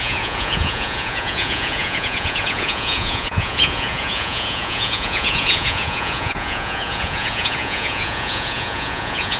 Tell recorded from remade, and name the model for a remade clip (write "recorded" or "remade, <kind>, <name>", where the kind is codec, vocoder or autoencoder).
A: remade, vocoder, Vocos